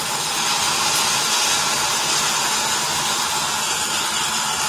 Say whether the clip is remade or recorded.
recorded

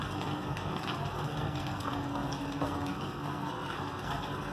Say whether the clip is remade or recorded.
remade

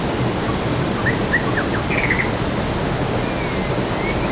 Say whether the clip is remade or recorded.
recorded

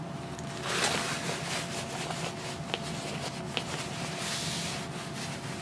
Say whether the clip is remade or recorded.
recorded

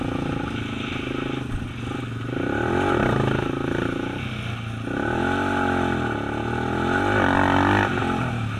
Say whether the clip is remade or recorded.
recorded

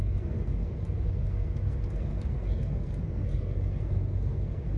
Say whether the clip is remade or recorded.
remade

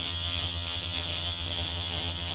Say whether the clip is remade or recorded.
remade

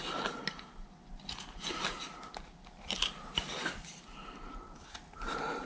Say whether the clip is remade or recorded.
recorded